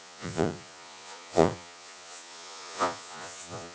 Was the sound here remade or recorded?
remade